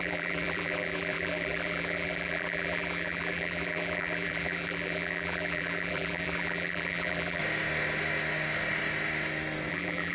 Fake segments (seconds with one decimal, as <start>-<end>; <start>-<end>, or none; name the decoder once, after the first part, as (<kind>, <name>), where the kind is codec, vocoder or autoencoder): 0.0-7.4 (vocoder, BigVGAN v2); 9.7-10.1